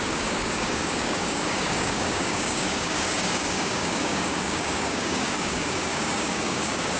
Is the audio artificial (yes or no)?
yes